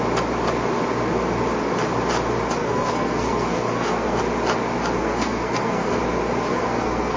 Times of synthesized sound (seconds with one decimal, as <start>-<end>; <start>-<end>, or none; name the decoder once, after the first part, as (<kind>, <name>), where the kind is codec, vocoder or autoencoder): 2.6-4.2 (codec, SNAC); 5.0-6.0; 6.5-7.2